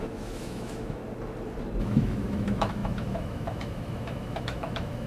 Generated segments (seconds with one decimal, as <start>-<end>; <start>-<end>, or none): 0.0-1.0; 1.8-5.1

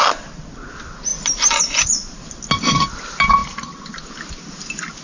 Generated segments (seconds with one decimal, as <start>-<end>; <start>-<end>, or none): none

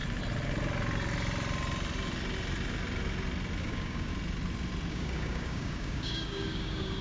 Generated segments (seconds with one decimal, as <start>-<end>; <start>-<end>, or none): 3.6-4.1; 4.9-7.0